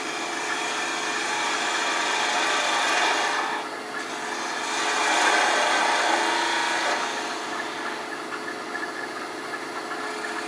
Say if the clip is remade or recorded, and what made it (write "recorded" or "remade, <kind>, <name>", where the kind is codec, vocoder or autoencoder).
recorded